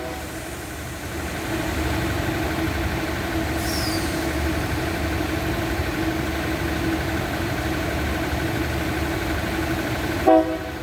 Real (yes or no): yes